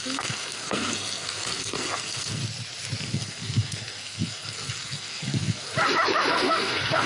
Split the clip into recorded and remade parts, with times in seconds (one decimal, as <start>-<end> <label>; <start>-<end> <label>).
0.0-2.4 remade; 2.4-3.0 recorded; 3.0-5.7 remade; 5.7-6.3 recorded; 6.3-7.1 remade